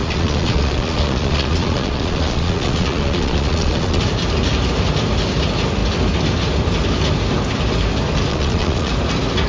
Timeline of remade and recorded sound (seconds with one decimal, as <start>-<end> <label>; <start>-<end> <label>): 0.0-4.0 remade; 4.0-8.3 recorded; 8.3-8.9 remade; 8.9-9.5 recorded